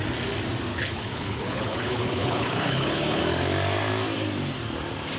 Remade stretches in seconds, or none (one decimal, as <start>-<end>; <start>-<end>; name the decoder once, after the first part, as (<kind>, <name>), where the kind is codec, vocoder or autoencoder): 0.7-3.2 (codec, HILCodec)